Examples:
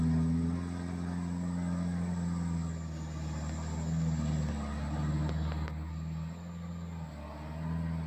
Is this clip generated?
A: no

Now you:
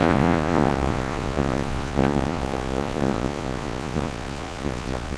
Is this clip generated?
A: yes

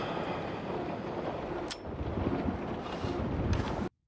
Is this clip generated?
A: no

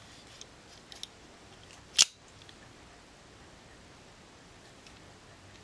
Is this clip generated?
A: no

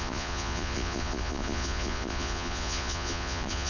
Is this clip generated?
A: yes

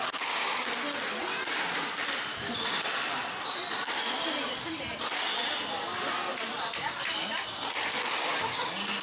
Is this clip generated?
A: no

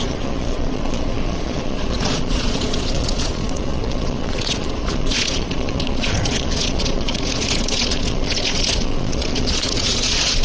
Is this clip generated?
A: yes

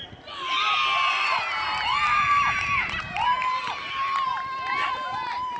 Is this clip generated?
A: no